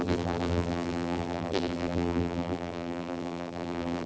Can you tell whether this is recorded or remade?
remade